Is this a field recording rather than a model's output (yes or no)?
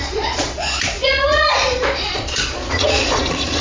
no